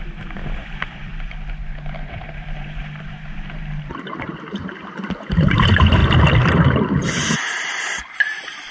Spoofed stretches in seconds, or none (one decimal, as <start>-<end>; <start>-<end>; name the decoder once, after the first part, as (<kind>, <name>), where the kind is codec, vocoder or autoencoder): 0.0-1.0 (vocoder, BigVGAN v2); 2.6-8.7